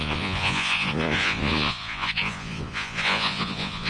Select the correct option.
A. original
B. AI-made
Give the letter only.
B